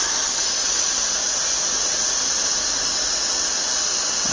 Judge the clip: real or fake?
real